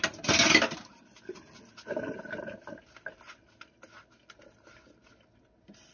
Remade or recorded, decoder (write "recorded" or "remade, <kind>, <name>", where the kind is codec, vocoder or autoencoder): recorded